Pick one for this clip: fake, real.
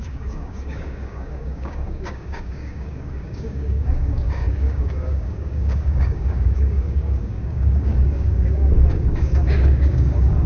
fake